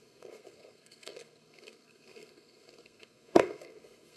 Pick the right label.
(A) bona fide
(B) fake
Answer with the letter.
B